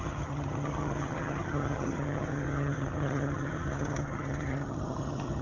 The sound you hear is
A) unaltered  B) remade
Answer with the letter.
B